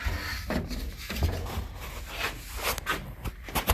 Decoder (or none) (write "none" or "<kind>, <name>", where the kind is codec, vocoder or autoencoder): none